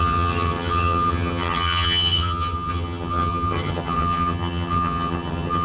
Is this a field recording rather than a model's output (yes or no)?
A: no